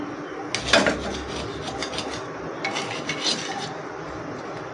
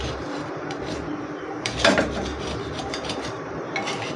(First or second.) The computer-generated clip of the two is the second